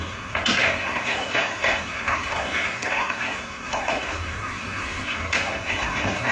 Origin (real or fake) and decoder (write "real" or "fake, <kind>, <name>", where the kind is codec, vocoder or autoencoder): fake, codec, SNAC